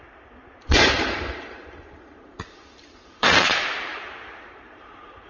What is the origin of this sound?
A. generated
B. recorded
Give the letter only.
A